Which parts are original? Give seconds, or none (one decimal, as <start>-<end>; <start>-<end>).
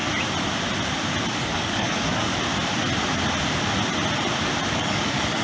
0.0-1.4; 2.3-4.7